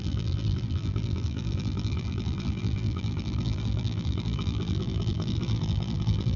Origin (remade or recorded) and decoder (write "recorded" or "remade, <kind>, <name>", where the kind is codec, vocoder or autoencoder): remade, vocoder, BigVGAN v2